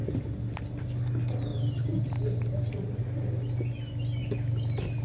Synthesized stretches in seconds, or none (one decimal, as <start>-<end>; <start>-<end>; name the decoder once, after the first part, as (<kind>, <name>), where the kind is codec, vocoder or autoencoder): 1.5-2.9 (vocoder, BigVGAN v2)